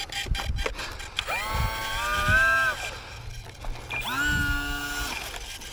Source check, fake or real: real